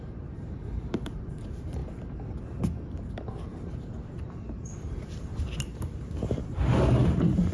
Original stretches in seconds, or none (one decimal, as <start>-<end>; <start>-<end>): 1.8-3.1